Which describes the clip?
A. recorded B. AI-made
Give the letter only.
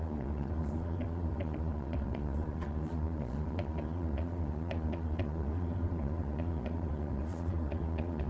B